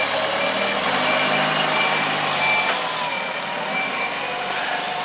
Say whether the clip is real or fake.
real